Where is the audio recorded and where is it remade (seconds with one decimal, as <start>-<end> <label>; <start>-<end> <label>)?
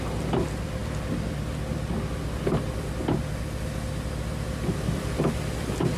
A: 0.0-6.0 recorded